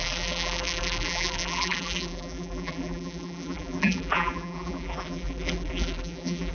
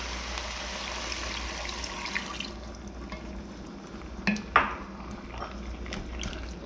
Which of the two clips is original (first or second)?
second